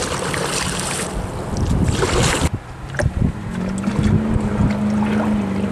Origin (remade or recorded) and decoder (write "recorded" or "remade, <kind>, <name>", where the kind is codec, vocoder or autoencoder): recorded